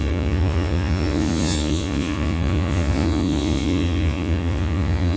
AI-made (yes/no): yes